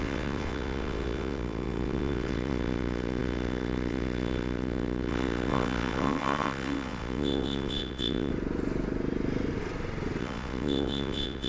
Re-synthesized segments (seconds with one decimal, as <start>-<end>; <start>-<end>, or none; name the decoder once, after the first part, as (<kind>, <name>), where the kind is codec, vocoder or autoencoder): 0.0-8.3 (vocoder, WaveNeXt); 10.2-11.5